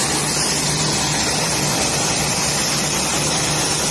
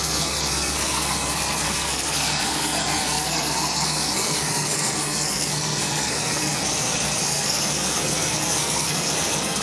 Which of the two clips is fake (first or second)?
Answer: second